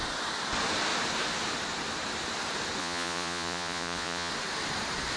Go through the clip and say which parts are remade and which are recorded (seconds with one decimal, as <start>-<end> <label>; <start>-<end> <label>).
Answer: 0.0-2.8 recorded; 2.8-4.3 remade; 4.3-5.2 recorded